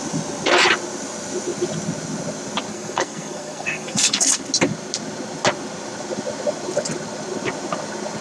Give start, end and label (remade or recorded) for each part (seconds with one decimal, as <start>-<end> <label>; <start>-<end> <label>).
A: 0.0-2.7 recorded; 2.7-4.4 remade; 4.4-8.2 recorded